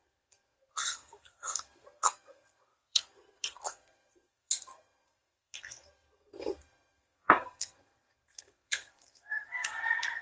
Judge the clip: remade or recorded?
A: remade